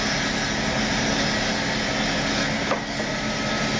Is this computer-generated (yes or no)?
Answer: no